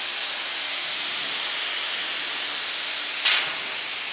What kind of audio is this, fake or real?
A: real